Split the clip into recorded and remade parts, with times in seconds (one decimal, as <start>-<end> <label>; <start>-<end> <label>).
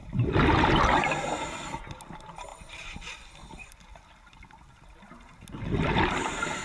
0.0-6.6 recorded